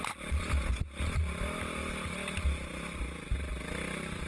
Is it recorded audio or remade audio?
recorded